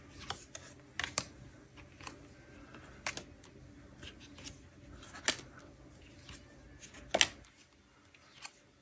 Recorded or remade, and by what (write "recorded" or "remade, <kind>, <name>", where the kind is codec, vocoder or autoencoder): recorded